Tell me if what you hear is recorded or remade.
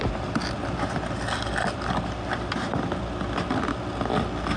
recorded